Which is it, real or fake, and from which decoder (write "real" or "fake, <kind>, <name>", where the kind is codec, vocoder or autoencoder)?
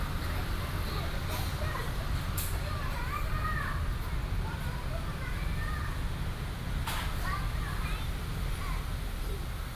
real